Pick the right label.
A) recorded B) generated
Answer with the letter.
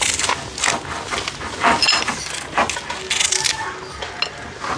A